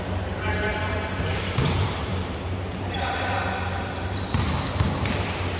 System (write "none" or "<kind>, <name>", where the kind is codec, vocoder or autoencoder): vocoder, BigVGAN v2